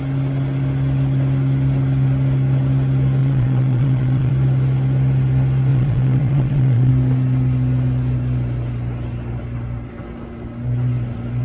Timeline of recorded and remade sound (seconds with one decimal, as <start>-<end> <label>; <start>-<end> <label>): 0.0-3.2 recorded; 3.2-4.3 remade; 4.3-5.7 recorded; 5.7-6.9 remade; 6.9-11.4 recorded